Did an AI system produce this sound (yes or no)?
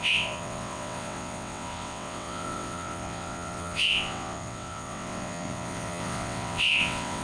yes